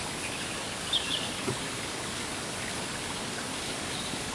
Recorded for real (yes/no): no